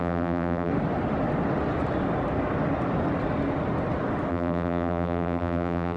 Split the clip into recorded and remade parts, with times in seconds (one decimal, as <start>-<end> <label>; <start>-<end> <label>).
0.0-0.7 remade; 0.7-4.3 recorded; 4.3-6.0 remade